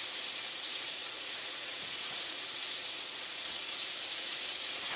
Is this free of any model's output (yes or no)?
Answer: no